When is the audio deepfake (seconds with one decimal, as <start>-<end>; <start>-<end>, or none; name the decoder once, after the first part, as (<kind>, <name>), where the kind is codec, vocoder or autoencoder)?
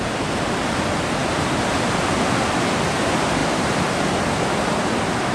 none